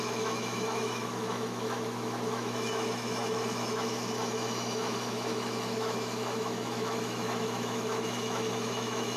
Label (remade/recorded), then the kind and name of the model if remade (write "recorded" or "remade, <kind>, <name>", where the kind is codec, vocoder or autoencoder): remade, autoencoder, DAC-VAE